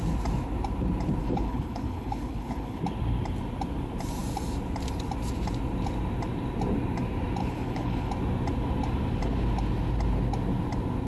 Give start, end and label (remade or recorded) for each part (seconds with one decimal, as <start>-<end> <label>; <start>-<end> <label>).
0.0-1.2 recorded; 1.2-2.8 remade; 2.8-7.4 recorded; 7.4-8.1 remade; 8.1-11.1 recorded